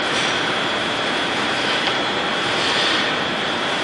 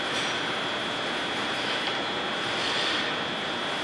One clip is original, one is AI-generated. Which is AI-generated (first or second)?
first